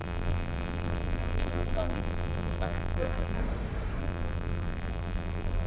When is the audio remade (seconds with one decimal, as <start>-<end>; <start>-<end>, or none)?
0.0-3.4; 4.0-5.7